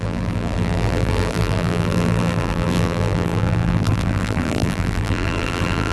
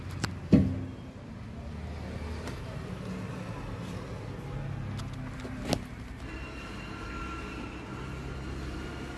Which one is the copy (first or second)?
first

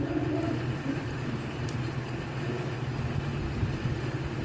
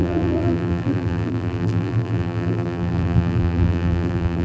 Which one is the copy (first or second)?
second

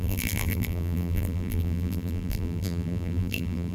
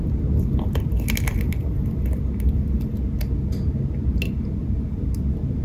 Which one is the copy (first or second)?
first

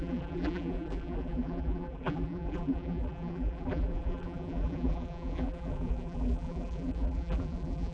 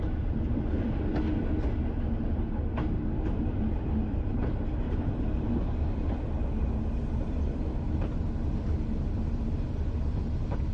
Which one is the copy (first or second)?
first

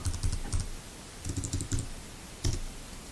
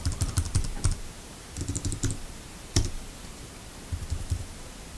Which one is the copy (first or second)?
second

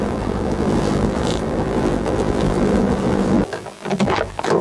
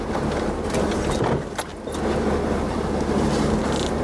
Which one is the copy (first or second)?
first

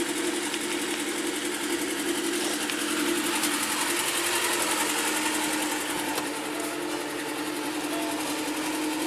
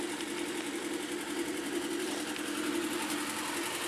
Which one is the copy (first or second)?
second